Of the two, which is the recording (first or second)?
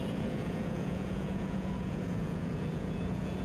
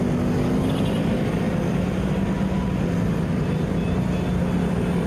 second